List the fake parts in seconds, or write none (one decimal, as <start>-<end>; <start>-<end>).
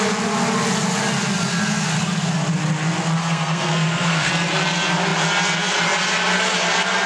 3.2-4.3